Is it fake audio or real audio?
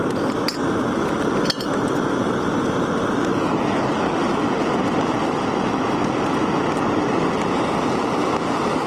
real